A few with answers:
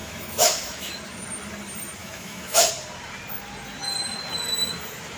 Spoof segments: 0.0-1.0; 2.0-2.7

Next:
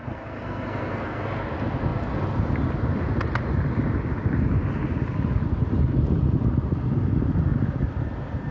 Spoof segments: 0.0-1.2

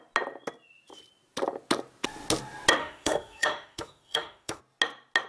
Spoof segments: 2.8-4.6

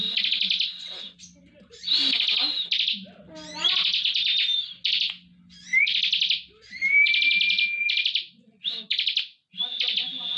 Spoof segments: none

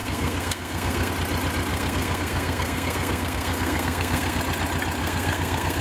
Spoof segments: 0.0-1.1; 1.7-4.4; 5.0-5.8

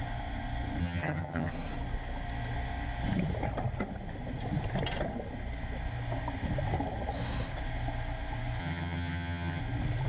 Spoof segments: 0.8-1.5; 8.6-9.6

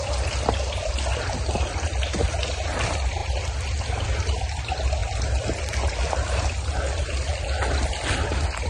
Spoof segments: none